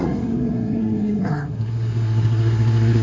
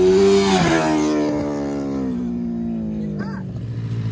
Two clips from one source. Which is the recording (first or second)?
second